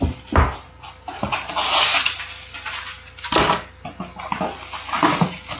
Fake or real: real